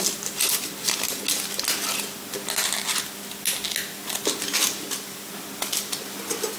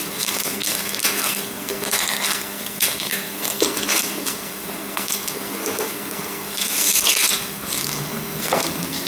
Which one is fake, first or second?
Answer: second